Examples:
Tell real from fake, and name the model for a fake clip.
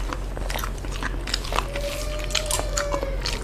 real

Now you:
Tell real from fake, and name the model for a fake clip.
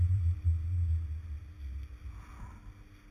real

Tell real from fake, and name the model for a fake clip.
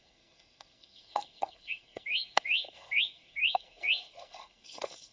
fake, codec, SNAC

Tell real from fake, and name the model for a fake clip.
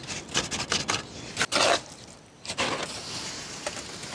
real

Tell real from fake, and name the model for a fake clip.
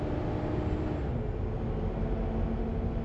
real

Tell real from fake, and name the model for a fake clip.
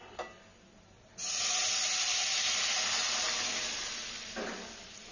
real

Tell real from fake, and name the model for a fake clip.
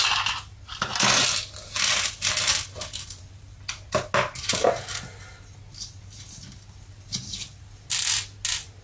real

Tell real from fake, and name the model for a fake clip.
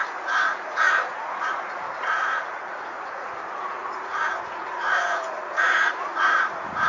fake, vocoder, Vocos